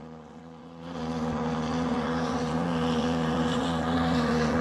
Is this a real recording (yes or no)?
no